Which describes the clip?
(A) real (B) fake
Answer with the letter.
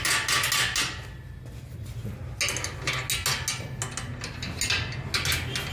A